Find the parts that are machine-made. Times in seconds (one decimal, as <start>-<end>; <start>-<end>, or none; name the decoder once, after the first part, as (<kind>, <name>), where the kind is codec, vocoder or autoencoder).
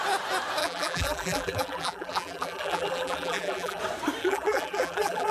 0.6-3.8 (vocoder, BigVGAN v2); 4.2-5.3